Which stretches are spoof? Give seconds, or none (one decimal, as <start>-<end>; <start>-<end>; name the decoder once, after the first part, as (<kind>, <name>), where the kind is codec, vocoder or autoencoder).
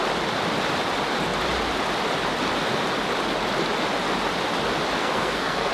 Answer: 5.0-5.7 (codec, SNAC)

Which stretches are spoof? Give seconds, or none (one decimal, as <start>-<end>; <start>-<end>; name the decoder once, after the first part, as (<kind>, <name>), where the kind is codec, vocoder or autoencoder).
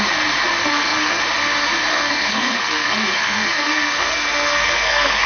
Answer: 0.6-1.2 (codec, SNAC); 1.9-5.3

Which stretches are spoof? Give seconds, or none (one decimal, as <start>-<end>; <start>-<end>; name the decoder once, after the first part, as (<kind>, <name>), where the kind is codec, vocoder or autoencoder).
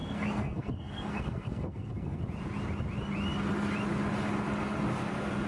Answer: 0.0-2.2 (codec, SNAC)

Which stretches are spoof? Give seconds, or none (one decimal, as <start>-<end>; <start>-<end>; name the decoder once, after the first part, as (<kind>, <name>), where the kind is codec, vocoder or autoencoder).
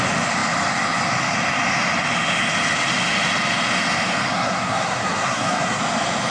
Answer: 4.3-5.8 (codec, SNAC)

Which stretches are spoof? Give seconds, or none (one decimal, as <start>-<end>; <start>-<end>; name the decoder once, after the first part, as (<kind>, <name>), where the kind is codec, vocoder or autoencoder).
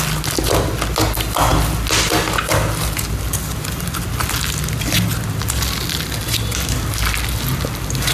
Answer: none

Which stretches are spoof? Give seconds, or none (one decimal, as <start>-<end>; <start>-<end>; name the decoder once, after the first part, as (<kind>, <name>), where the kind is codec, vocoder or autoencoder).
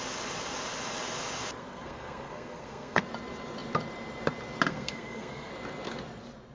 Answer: 1.6-3.0 (codec, SNAC); 4.7-5.5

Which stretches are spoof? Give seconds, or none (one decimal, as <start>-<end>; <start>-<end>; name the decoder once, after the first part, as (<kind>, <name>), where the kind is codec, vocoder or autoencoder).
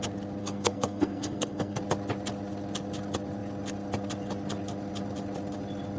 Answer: 0.4-1.8 (codec, SNAC)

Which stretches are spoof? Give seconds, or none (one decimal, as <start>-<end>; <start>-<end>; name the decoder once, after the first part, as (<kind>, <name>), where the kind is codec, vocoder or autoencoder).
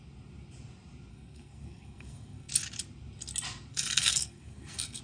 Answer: 1.1-2.5 (codec, SNAC); 3.7-5.0